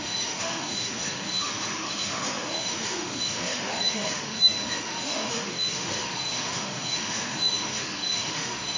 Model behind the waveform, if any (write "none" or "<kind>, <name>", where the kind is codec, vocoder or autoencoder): autoencoder, DAC-VAE